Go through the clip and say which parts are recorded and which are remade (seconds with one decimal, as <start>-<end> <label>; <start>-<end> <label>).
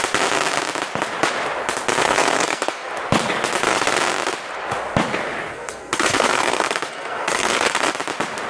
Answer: 0.0-2.0 recorded; 2.0-2.9 remade; 2.9-5.5 recorded; 5.5-7.9 remade; 7.9-8.5 recorded